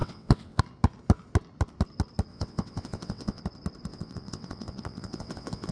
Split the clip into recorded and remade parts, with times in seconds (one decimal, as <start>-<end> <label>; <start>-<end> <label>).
0.0-0.6 remade; 0.6-2.3 recorded; 2.3-3.4 remade; 3.4-3.9 recorded; 3.9-5.7 remade